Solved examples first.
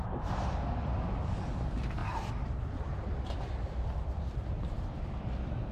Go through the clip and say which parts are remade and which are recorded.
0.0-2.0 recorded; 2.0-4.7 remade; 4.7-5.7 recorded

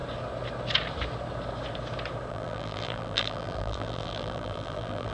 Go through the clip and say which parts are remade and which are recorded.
0.0-2.3 recorded; 2.3-5.1 remade

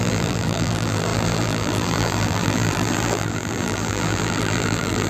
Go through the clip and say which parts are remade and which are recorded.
0.0-5.1 remade

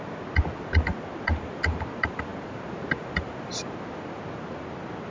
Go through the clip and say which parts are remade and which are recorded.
0.0-5.1 recorded

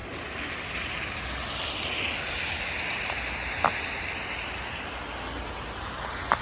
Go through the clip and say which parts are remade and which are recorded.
0.0-1.0 remade; 1.0-6.4 recorded

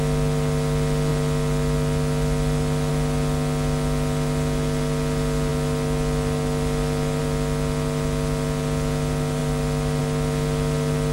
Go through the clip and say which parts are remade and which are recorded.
0.0-11.1 recorded

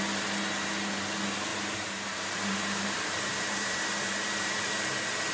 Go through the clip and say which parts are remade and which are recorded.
0.0-1.5 recorded; 1.5-4.7 remade; 4.7-5.3 recorded

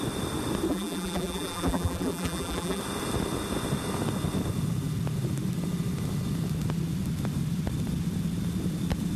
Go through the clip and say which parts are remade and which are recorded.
0.0-0.7 recorded; 0.7-2.8 remade; 2.8-9.2 recorded